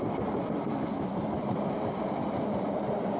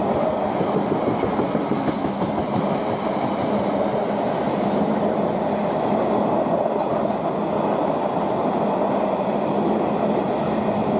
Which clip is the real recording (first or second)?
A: second